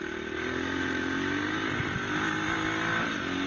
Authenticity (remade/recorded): recorded